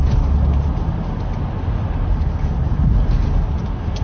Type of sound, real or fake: real